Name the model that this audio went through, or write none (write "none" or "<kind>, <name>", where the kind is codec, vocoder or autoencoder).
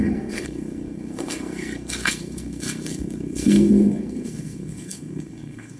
codec, SNAC